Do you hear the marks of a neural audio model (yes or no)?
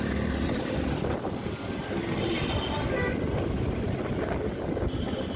no